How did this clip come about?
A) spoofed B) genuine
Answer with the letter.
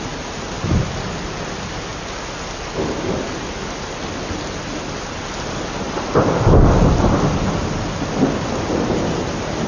B